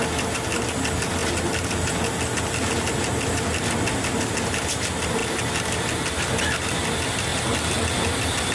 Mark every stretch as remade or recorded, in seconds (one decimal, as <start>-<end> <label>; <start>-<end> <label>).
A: 0.0-8.5 recorded